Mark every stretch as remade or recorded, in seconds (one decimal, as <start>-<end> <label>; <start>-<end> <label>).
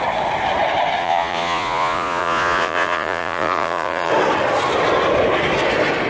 0.0-1.0 recorded; 1.0-4.1 remade; 4.1-6.1 recorded